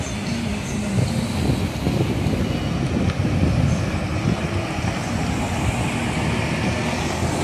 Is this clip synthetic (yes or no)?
no